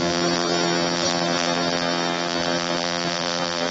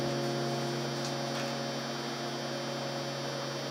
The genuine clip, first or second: second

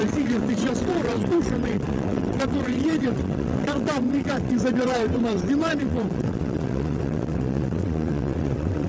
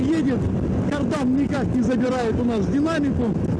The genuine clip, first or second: second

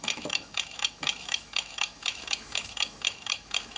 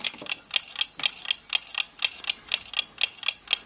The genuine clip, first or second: second